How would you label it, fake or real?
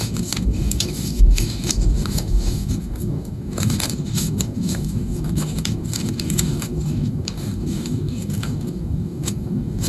fake